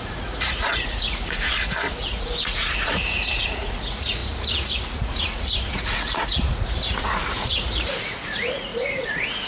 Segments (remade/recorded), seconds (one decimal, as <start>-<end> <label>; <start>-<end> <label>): 0.0-9.5 remade